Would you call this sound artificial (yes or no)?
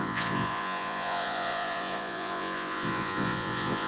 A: yes